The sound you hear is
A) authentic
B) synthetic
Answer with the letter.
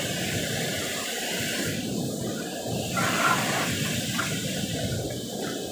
A